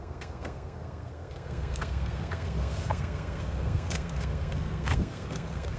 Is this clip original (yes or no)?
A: no